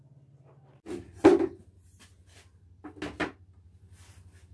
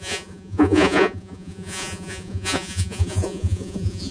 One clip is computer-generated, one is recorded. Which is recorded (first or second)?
first